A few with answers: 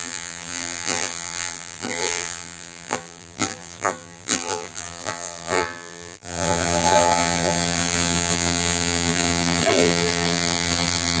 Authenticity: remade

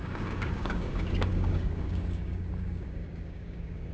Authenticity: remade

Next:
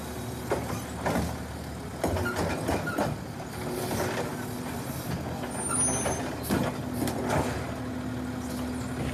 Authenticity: recorded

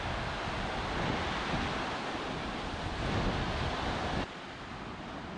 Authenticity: recorded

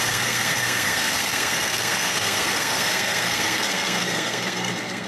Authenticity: remade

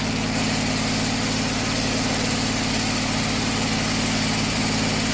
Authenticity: recorded